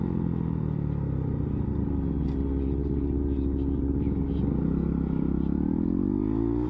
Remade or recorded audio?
recorded